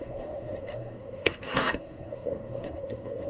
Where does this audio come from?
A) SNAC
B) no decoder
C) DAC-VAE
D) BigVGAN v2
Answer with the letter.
A